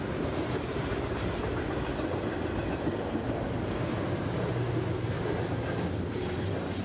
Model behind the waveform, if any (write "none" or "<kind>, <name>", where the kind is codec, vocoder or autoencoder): none